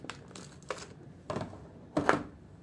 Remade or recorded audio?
recorded